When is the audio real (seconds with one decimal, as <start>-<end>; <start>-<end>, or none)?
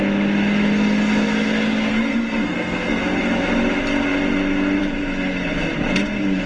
0.0-1.9; 3.0-6.5